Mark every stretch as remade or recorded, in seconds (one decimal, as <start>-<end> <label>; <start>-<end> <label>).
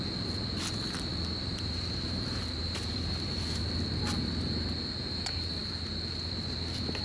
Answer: 0.0-1.1 recorded; 1.1-3.6 remade; 3.6-7.0 recorded